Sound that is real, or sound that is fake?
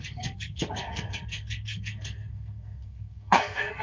fake